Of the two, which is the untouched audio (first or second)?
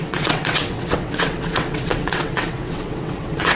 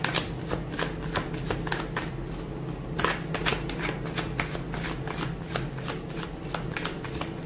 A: second